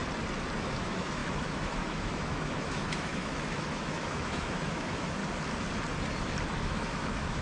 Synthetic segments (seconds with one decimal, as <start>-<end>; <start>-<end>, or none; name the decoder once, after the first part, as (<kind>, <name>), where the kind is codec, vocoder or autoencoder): 0.6-5.2 (autoencoder, DAC-VAE); 6.6-7.4